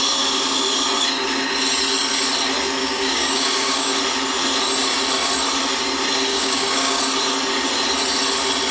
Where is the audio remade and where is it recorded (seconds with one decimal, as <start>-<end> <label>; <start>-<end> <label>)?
0.0-2.8 recorded; 2.8-4.0 remade; 4.0-6.3 recorded; 6.3-7.0 remade; 7.0-8.7 recorded